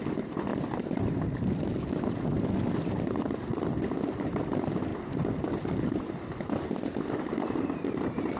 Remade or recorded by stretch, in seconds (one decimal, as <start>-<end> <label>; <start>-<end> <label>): 0.0-0.5 remade; 0.5-2.2 recorded; 2.2-4.9 remade; 4.9-7.4 recorded; 7.4-8.4 remade